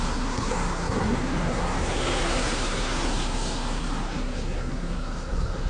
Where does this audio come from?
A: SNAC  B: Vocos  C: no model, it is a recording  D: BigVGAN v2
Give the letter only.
A